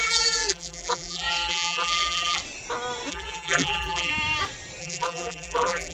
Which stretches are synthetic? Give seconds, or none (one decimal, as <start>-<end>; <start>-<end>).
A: 0.0-2.4; 3.1-4.1; 4.8-5.9